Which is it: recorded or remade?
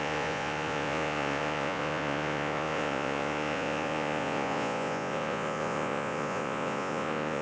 remade